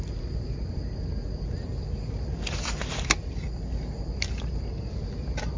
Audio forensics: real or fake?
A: real